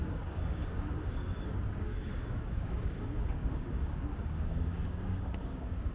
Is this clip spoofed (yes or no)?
yes